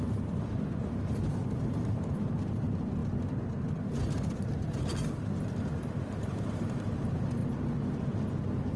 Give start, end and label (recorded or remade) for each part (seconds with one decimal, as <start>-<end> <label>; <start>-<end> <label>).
0.0-3.0 remade; 3.0-5.9 recorded; 5.9-7.4 remade; 7.4-8.8 recorded